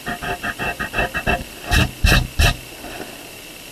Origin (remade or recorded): recorded